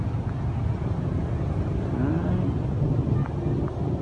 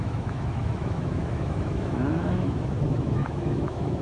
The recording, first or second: first